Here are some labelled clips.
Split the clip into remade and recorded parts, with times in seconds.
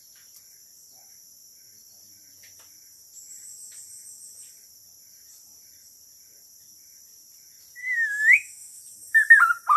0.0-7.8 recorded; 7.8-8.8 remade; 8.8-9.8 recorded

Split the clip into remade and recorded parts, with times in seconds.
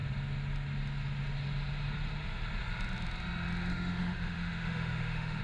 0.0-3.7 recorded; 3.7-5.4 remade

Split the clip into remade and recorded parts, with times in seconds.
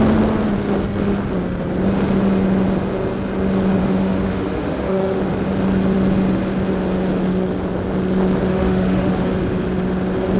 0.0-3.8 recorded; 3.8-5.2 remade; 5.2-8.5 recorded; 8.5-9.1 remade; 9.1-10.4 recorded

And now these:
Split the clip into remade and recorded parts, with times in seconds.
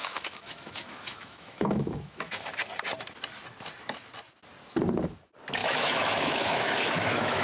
0.0-2.5 remade; 2.5-5.6 recorded; 5.6-7.4 remade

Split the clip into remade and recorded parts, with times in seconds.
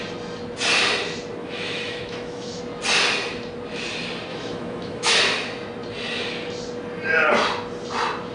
0.0-1.4 recorded; 1.4-2.6 remade; 2.6-4.3 recorded; 4.3-5.1 remade; 5.1-8.3 recorded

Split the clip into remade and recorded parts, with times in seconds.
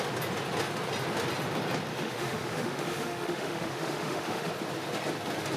0.0-1.9 recorded; 1.9-4.5 remade; 4.5-5.6 recorded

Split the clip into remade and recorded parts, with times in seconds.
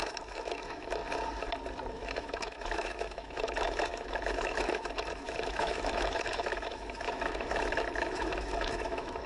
0.0-1.0 remade; 1.0-1.9 recorded; 1.9-9.3 remade